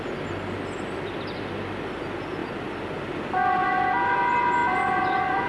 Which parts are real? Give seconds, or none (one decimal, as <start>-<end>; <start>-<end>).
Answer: 0.0-5.5